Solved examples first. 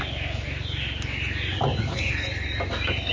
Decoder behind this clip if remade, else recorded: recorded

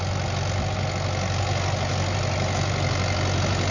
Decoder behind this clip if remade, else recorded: recorded